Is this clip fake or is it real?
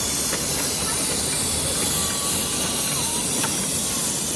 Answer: real